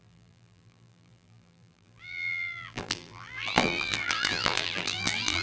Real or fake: fake